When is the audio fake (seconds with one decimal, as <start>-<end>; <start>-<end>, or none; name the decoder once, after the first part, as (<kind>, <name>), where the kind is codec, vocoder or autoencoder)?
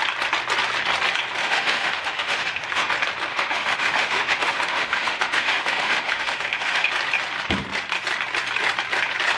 1.4-2.9 (autoencoder, DAC-VAE); 3.3-6.9